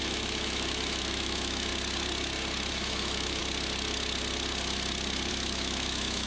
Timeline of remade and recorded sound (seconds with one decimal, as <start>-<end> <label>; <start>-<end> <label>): 0.0-1.7 remade; 1.7-2.7 recorded; 2.7-3.4 remade; 3.4-5.3 recorded; 5.3-6.3 remade